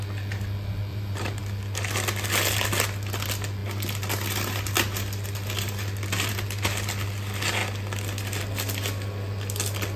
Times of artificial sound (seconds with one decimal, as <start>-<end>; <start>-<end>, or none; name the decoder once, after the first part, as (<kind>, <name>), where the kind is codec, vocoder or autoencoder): 0.9-1.4 (vocoder, BigVGAN v2)